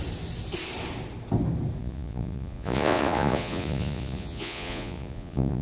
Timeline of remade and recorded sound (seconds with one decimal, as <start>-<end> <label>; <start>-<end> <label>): 0.0-1.8 recorded; 1.8-5.6 remade